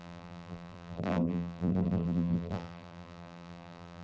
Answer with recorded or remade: remade